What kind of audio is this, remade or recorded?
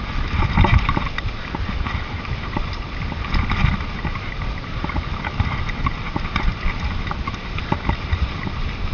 recorded